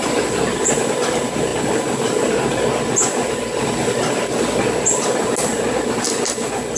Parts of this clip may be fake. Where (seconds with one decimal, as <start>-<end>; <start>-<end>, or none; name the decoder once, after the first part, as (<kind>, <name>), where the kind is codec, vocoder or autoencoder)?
none